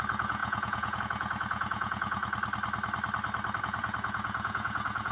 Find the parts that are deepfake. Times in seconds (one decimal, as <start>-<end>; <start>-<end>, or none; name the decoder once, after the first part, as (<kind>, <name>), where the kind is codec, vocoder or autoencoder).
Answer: 0.0-2.2 (vocoder, Vocos); 3.6-5.1